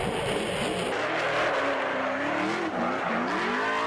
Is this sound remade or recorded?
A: recorded